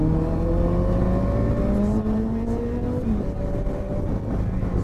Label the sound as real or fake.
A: real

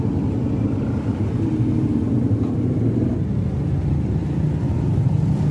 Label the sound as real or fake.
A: real